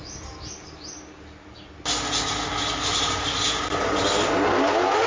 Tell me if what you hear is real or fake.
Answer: real